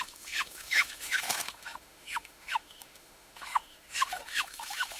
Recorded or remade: remade